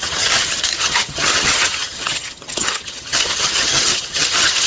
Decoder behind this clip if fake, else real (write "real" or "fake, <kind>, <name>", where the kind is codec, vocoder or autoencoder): fake, vocoder, HiFi-GAN